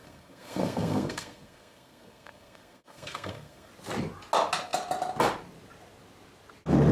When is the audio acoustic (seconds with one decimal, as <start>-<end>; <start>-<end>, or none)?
3.7-6.9